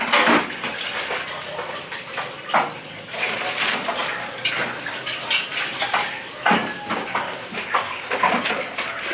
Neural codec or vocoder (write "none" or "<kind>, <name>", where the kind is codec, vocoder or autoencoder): none